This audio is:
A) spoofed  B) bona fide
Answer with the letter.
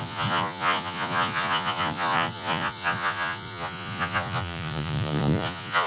A